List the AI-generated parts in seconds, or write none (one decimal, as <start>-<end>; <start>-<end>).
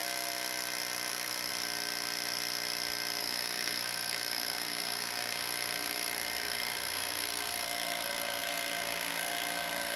1.1-1.5; 3.2-10.0